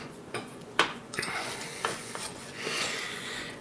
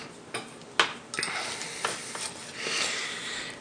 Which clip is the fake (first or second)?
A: first